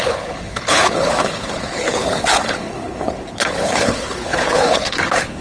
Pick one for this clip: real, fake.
fake